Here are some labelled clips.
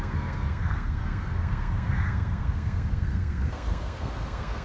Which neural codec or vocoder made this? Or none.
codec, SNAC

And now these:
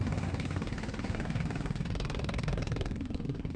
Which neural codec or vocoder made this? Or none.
codec, SNAC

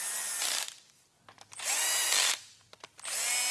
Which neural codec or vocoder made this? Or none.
none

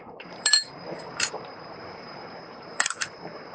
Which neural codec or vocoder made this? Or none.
vocoder, BigVGAN v2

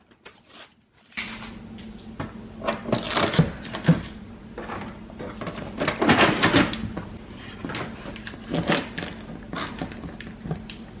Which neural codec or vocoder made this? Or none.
none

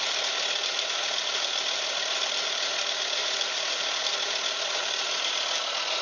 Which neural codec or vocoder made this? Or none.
none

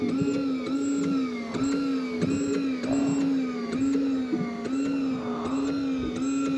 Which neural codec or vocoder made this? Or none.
none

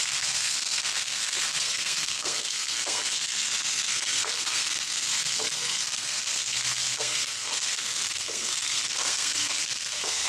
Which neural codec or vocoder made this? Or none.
codec, SNAC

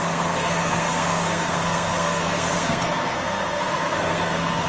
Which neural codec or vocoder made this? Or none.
codec, SNAC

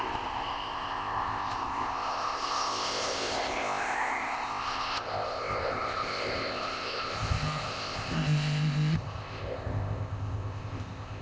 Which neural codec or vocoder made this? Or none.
codec, ZipCodec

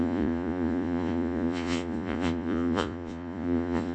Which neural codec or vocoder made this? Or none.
vocoder, Vocos